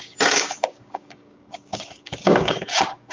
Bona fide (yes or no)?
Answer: no